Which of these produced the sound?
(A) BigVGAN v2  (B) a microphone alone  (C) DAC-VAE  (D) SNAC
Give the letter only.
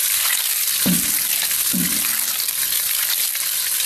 B